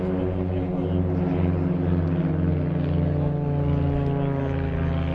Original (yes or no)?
yes